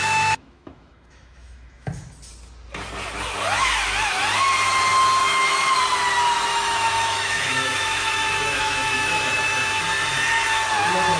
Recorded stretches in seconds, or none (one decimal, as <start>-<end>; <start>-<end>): 1.9-5.2; 5.8-6.5; 9.8-11.2